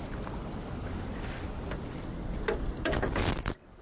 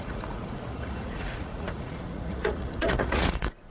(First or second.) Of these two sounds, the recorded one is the first